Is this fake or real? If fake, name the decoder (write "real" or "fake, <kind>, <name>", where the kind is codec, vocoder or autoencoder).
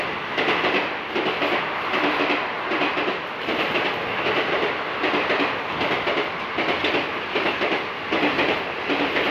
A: real